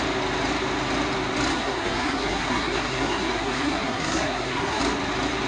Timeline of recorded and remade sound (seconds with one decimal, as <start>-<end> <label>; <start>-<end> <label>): 0.0-1.5 recorded; 1.5-4.8 remade; 4.8-5.5 recorded

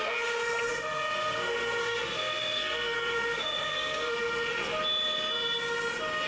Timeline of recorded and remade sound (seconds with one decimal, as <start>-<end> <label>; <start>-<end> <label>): 0.0-0.7 recorded; 0.7-4.5 remade; 4.5-6.3 recorded